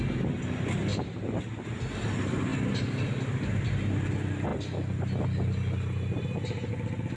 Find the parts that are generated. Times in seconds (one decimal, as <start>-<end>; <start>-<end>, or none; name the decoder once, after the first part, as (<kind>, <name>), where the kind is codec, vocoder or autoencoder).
none